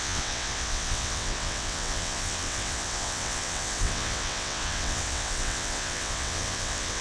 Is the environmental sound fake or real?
fake